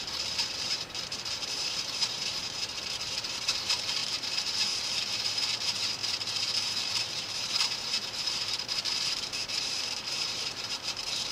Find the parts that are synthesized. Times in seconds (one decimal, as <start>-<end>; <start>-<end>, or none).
0.0-11.3